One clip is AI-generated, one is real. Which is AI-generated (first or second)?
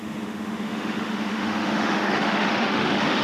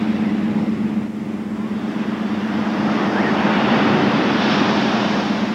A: first